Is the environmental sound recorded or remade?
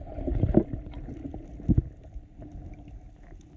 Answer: recorded